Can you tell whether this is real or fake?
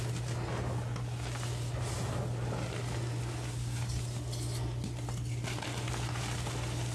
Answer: real